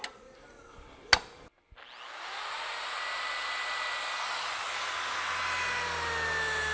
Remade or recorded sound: recorded